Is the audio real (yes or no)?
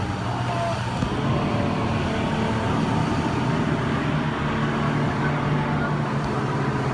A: yes